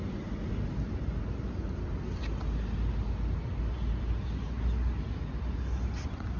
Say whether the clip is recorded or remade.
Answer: recorded